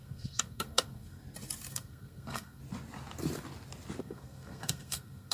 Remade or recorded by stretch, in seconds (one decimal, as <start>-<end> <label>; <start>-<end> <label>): 0.0-1.2 remade; 1.2-1.7 recorded; 1.7-2.6 remade; 2.6-4.0 recorded; 4.0-5.3 remade

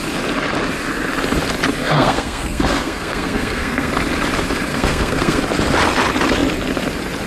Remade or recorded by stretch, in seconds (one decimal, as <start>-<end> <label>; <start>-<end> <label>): 0.0-1.8 recorded; 1.8-3.9 remade; 3.9-4.7 recorded; 4.7-5.4 remade; 5.4-7.3 recorded

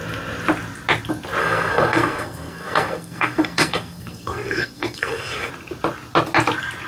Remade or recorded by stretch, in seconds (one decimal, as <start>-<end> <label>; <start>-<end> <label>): 0.0-1.4 recorded; 1.4-5.5 remade; 5.5-6.9 recorded

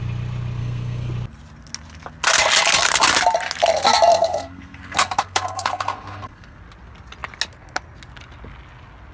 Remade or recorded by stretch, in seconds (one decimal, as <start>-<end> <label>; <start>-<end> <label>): 0.0-0.6 recorded; 0.6-1.1 remade; 1.1-4.1 recorded; 4.1-6.6 remade; 6.6-9.1 recorded

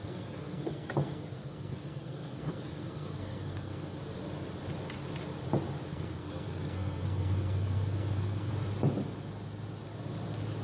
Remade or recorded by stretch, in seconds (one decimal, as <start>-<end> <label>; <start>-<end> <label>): 0.0-4.0 remade; 4.0-5.9 recorded; 5.9-8.5 remade; 8.5-10.6 recorded

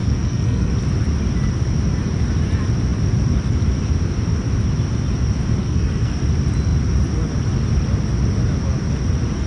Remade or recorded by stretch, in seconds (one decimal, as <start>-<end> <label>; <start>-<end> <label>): 0.0-0.7 remade; 0.7-5.6 recorded; 5.6-6.2 remade; 6.2-9.5 recorded

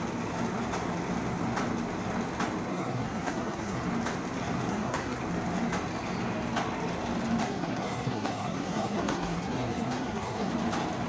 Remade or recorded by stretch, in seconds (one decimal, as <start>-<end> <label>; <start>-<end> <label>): 0.0-2.7 recorded; 2.7-3.9 remade; 3.9-4.7 recorded; 4.7-5.2 remade; 5.2-7.4 recorded; 7.4-10.5 remade; 10.5-11.1 recorded

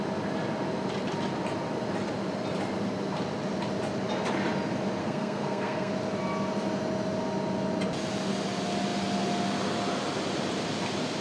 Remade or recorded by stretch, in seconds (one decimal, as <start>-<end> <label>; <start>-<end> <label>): 0.0-5.0 recorded; 5.0-5.9 remade; 5.9-11.2 recorded